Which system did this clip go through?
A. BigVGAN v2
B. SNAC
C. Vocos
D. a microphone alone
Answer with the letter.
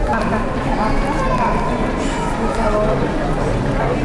D